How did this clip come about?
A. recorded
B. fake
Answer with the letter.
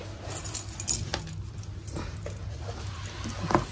A